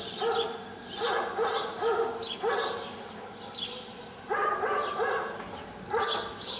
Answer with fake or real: real